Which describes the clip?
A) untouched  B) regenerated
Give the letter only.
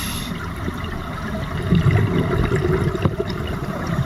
A